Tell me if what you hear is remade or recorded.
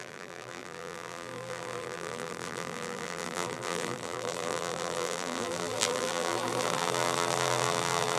remade